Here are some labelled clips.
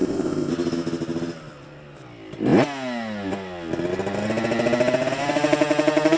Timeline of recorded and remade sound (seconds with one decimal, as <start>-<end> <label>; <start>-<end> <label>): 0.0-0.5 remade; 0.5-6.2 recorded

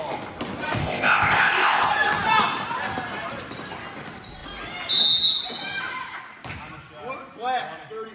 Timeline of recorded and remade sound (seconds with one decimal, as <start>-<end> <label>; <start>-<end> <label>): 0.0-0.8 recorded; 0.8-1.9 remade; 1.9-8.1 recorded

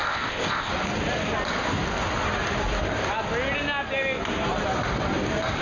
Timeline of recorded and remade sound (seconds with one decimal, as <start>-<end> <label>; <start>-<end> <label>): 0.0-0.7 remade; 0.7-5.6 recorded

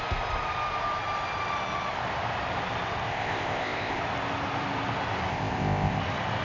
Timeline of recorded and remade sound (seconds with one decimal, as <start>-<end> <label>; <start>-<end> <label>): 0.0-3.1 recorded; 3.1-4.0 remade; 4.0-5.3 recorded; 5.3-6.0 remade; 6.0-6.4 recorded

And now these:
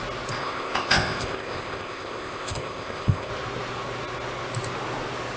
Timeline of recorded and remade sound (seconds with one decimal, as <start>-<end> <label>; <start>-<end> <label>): 0.0-0.4 recorded; 0.4-3.3 remade; 3.3-5.4 recorded

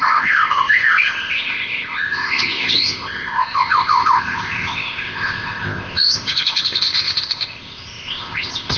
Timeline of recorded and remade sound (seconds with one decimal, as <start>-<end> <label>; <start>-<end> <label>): 0.0-8.8 remade

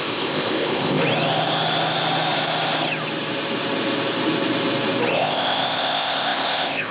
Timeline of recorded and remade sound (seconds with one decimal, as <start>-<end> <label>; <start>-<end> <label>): 0.0-1.0 remade; 1.0-5.1 recorded; 5.1-6.9 remade